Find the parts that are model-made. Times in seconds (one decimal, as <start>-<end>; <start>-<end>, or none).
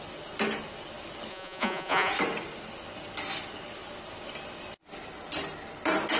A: 1.3-2.1